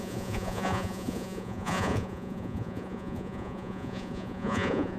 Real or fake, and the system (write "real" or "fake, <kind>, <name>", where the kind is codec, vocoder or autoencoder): fake, vocoder, Vocos